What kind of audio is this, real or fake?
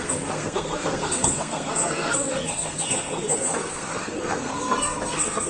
fake